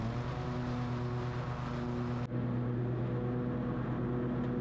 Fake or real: real